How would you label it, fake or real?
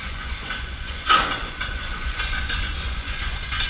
fake